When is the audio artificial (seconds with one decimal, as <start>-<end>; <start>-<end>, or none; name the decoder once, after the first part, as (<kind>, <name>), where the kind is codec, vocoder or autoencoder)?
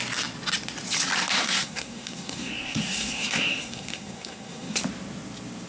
1.4-4.8 (codec, SNAC)